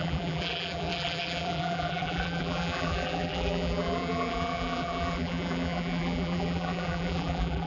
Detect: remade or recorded remade